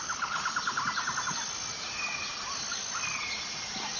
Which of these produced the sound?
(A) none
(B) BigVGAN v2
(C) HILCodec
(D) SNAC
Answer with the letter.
A